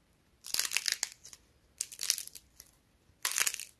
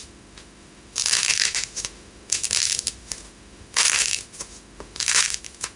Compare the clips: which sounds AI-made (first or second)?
second